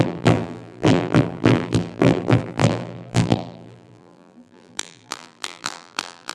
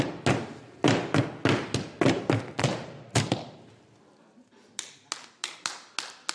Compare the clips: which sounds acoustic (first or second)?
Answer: second